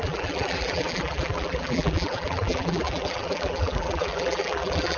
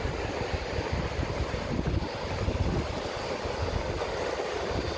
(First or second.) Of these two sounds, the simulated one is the first